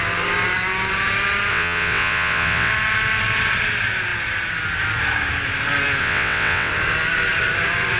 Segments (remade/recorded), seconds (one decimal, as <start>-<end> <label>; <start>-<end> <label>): 0.0-1.5 recorded; 1.5-2.7 remade; 2.7-6.0 recorded; 6.0-6.7 remade; 6.7-8.0 recorded